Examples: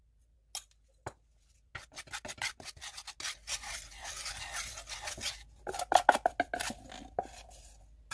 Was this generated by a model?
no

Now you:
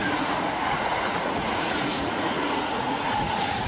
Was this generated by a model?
yes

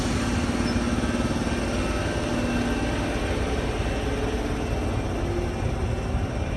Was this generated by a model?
no